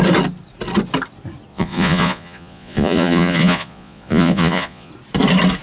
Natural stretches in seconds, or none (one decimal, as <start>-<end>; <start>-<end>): 0.0-1.5; 4.9-5.6